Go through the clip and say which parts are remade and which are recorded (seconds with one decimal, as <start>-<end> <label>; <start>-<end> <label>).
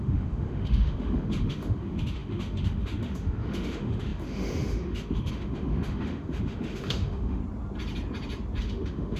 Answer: 0.0-7.4 remade; 7.4-8.6 recorded; 8.6-9.2 remade